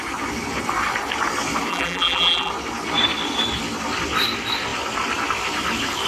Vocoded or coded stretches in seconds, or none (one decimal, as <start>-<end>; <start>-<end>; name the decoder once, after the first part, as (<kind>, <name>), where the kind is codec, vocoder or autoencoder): 1.7-2.5 (vocoder, BigVGAN v2)